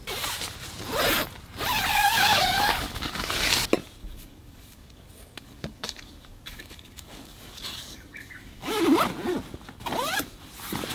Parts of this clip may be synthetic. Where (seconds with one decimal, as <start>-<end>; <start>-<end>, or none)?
1.9-3.3; 4.0-8.8